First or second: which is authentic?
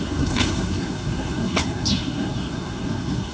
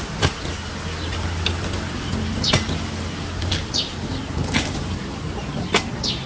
second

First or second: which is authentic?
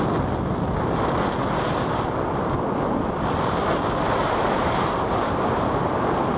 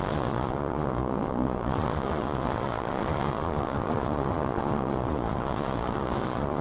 first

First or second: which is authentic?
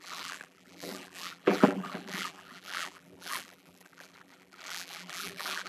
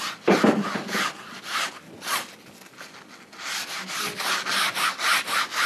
second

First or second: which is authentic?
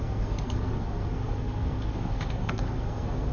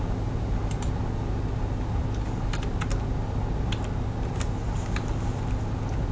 second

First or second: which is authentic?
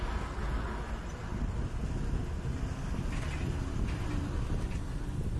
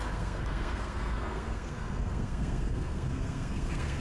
first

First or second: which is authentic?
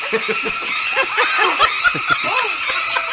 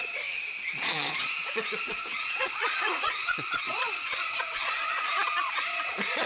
first